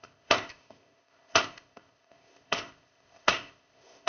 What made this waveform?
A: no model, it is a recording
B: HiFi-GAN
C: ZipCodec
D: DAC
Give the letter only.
C